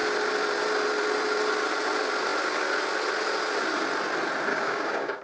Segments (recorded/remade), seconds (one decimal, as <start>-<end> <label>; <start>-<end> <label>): 0.0-4.5 recorded; 4.5-5.2 remade